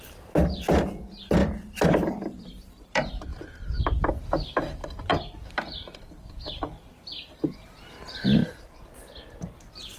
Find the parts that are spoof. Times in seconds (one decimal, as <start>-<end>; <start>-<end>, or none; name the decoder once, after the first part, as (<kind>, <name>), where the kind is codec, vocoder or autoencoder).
0.0-3.3 (vocoder, BigVGAN v2); 4.1-8.4